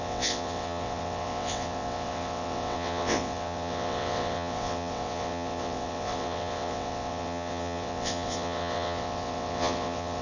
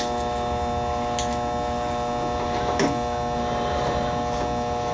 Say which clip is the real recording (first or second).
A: second